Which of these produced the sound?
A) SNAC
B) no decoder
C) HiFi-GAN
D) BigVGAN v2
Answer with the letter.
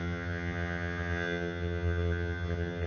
C